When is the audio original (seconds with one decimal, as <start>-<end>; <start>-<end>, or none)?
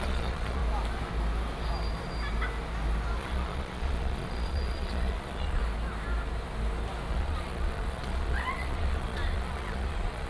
0.6-3.2; 5.6-7.1